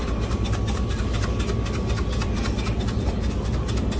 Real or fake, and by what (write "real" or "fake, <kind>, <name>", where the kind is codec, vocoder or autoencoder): real